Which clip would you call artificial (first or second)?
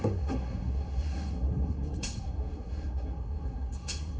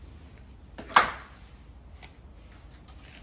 first